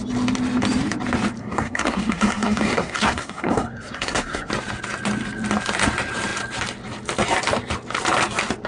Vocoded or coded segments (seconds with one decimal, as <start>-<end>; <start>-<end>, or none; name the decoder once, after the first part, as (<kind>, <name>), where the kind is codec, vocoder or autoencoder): 1.4-4.5 (codec, SNAC)